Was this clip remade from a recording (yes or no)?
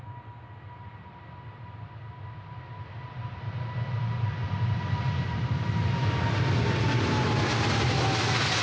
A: no